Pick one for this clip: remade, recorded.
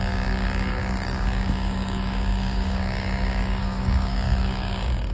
remade